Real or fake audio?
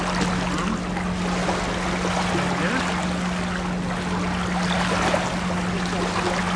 real